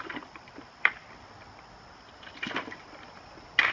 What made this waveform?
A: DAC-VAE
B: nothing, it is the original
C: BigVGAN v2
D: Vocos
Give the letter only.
B